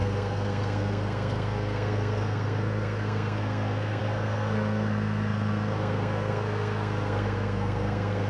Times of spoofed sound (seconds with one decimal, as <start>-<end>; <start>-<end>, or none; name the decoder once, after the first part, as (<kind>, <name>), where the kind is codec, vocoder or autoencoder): 0.0-8.3 (codec, SNAC)